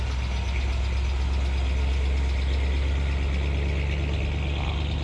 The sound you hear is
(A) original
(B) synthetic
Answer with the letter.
A